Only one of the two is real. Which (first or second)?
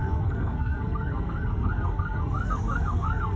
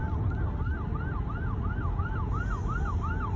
second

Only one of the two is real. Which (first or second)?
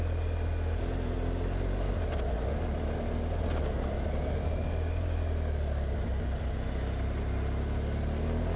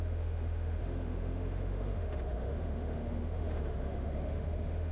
first